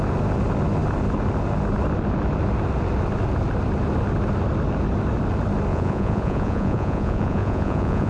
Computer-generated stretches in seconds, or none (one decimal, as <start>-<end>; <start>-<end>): 5.7-8.1